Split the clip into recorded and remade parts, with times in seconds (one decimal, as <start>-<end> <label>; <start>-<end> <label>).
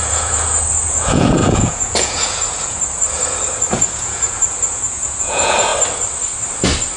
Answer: 0.0-5.7 remade; 5.7-7.0 recorded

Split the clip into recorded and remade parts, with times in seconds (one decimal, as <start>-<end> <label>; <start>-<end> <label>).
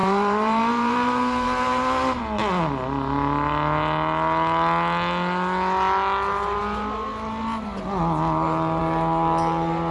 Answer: 0.0-2.2 remade; 2.2-9.9 recorded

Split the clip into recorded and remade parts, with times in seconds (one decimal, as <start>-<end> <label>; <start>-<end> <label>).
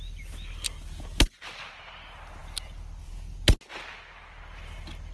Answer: 0.0-2.4 recorded; 2.4-3.1 remade; 3.1-5.1 recorded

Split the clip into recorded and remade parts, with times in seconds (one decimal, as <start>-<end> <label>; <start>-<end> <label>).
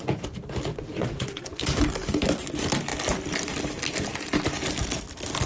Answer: 0.0-0.7 recorded; 0.7-1.4 remade; 1.4-5.5 recorded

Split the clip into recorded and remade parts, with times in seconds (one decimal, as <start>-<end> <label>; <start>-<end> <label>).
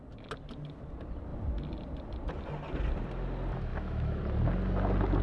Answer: 0.0-3.7 recorded; 3.7-4.2 remade; 4.2-5.2 recorded